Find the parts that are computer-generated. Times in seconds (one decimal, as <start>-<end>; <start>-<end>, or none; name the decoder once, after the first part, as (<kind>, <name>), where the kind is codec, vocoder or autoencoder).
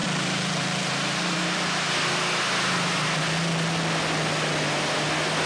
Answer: 0.0-1.9 (vocoder, BigVGAN v2)